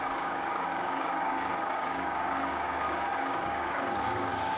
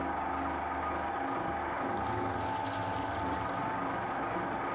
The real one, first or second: second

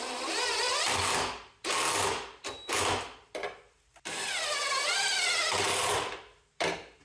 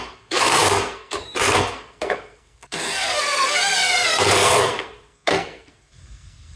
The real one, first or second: first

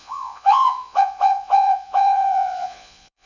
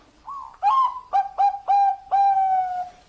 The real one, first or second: second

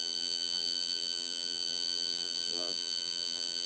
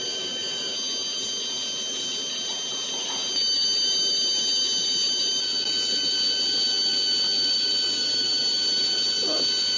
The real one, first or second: second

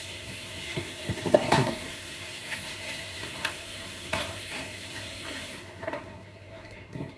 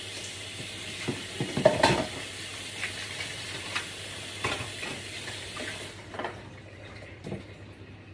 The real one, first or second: second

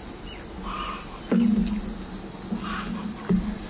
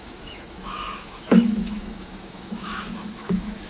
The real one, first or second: first